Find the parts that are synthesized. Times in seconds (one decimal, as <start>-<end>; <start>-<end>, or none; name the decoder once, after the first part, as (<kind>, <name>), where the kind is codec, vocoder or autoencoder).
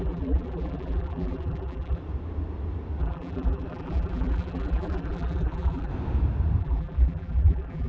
0.0-2.0 (vocoder, BigVGAN v2); 3.0-5.9; 6.6-7.9